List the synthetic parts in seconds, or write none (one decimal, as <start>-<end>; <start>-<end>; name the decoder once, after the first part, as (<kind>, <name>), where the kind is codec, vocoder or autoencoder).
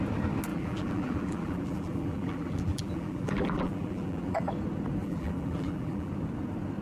0.5-4.5 (vocoder, BigVGAN v2); 5.0-6.1